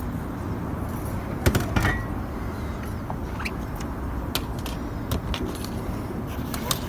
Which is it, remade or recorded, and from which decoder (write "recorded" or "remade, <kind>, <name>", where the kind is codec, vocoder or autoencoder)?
recorded